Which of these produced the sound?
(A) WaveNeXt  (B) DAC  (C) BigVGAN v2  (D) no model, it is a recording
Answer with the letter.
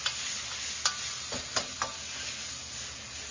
D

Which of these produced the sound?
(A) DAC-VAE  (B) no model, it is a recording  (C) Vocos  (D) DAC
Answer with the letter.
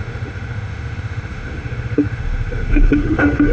A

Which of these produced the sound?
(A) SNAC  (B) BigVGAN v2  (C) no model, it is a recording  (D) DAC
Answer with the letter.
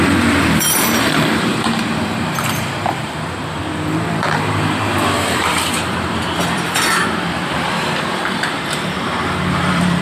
B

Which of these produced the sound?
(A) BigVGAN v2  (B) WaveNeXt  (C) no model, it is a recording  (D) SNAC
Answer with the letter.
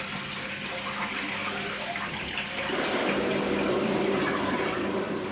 C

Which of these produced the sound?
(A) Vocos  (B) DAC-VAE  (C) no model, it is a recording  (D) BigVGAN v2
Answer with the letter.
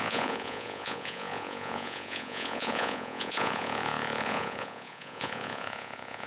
A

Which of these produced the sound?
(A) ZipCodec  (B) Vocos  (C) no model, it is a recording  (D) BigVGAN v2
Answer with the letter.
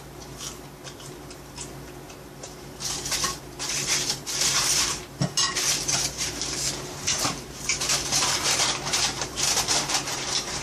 D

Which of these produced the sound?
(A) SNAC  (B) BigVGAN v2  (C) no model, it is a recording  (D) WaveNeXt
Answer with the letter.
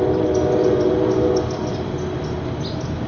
C